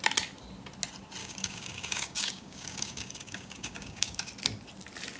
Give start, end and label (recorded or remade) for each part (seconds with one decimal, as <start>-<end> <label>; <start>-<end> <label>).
0.0-1.2 recorded; 1.2-4.3 remade; 4.3-5.2 recorded